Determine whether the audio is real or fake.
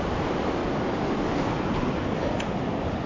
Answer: real